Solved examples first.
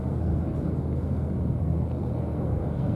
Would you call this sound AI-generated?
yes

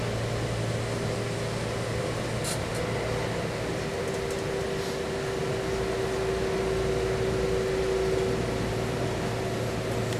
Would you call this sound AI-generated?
no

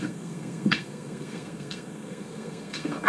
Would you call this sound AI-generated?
yes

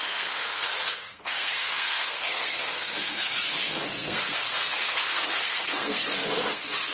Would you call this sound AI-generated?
yes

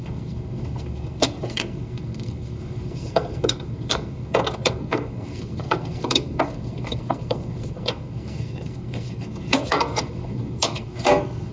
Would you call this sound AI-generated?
yes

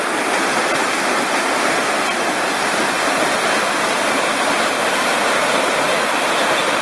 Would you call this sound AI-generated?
no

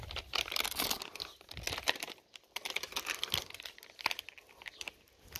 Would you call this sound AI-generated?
no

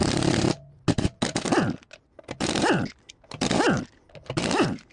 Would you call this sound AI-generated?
no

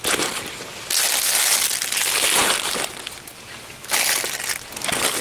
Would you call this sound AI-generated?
no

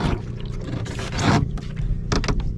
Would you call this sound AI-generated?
no